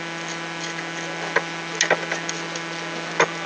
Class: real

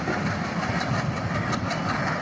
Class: real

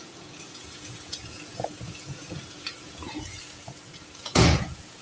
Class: fake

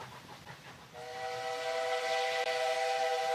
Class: real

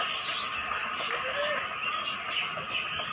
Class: real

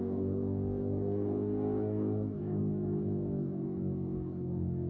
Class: fake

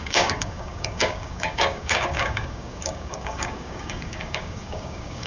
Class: fake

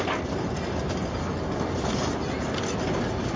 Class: real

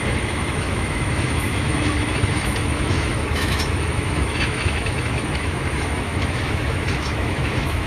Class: fake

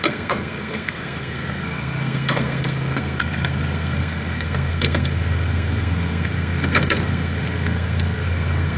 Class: fake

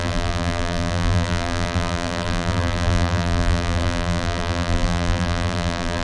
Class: fake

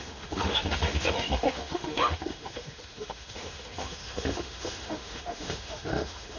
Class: fake